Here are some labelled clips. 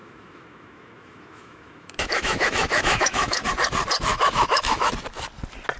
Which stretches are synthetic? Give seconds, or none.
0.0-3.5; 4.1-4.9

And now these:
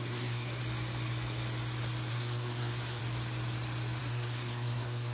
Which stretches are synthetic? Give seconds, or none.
0.0-0.6; 2.1-3.0; 4.0-5.1